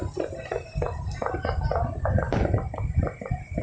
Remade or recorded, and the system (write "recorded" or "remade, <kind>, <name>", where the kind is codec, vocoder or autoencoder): recorded